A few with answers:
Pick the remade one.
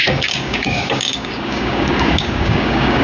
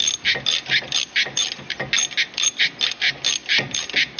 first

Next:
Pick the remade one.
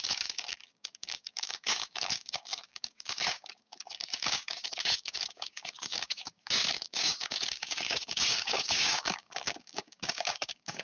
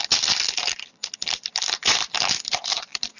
first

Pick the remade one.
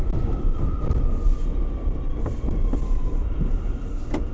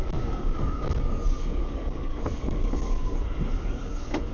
second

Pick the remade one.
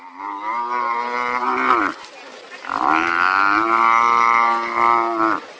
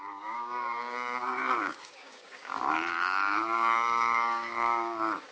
second